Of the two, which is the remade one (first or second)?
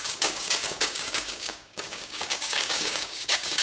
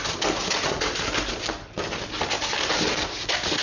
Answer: first